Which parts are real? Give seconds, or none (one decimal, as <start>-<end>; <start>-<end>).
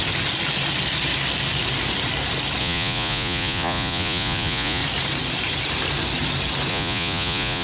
0.0-2.6; 4.8-6.7